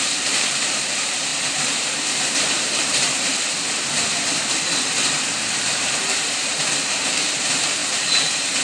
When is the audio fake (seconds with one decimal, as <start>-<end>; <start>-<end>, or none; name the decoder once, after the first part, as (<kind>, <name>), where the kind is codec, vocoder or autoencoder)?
0.0-1.3 (vocoder, BigVGAN v2); 2.2-3.3; 5.7-8.6